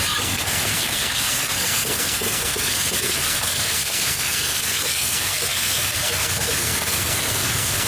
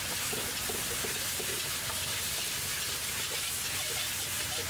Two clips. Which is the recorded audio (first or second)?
second